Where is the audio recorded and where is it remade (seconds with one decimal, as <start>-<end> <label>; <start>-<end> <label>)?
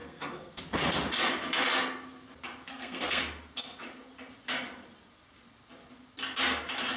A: 0.0-0.6 remade; 0.6-2.7 recorded; 2.7-3.2 remade; 3.2-7.0 recorded